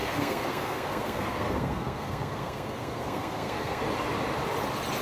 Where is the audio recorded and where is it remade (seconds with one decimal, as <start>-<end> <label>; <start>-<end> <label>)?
0.0-3.8 remade; 3.8-5.0 recorded